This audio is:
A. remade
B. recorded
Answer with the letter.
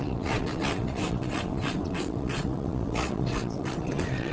A